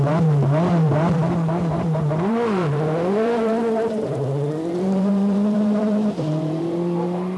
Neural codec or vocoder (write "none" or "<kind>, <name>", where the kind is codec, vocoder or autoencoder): vocoder, BigVGAN v2